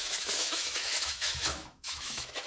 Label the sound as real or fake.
fake